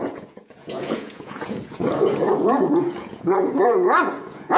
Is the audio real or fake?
fake